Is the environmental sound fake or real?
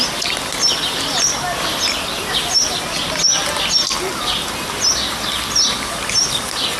real